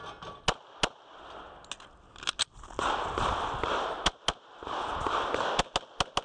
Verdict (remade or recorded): recorded